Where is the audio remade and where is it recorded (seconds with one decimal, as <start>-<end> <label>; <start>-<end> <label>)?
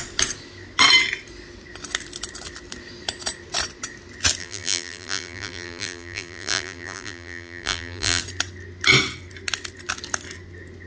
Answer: 0.0-4.4 recorded; 4.4-8.2 remade; 8.2-10.9 recorded